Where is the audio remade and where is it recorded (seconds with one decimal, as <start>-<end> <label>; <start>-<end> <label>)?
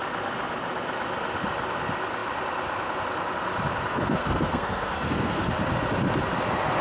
0.0-3.9 recorded; 3.9-5.5 remade; 5.5-6.8 recorded